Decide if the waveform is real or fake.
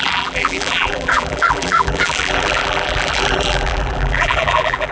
fake